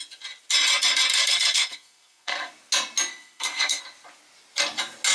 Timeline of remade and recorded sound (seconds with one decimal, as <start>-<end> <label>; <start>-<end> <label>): 0.0-1.1 recorded; 1.1-2.5 remade; 2.5-3.1 recorded; 3.1-3.8 remade; 3.8-5.1 recorded